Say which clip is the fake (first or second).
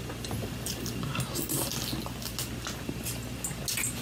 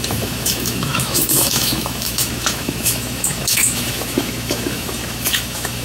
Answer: second